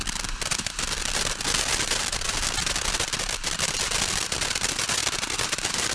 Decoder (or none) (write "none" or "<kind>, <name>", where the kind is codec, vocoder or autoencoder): none